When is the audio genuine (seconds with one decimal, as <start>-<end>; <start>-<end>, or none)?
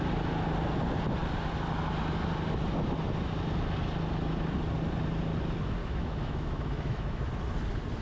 0.0-5.8; 7.3-8.0